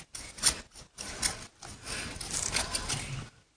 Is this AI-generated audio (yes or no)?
no